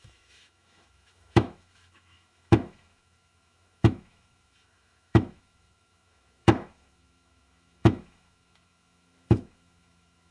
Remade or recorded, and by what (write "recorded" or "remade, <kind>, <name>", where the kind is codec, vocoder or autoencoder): remade, autoencoder, DAC-VAE